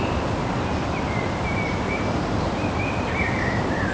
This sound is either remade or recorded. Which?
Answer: recorded